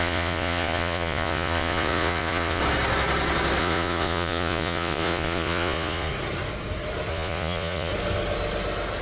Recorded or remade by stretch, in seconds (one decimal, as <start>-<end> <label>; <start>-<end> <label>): 0.0-2.6 remade; 2.6-3.6 recorded; 3.6-6.1 remade; 6.1-7.1 recorded; 7.1-7.9 remade; 7.9-9.0 recorded